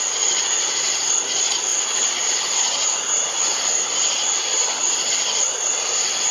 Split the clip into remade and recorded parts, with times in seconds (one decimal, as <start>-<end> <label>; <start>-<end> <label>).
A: 0.0-6.3 recorded